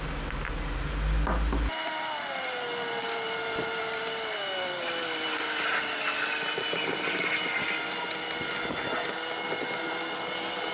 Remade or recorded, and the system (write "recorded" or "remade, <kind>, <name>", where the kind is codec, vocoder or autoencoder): recorded